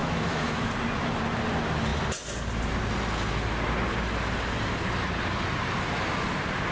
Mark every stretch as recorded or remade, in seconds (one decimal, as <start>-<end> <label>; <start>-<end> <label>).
0.0-0.7 remade; 0.7-6.7 recorded